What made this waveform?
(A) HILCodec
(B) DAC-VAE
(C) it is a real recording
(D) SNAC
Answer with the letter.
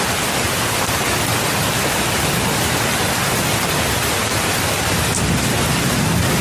C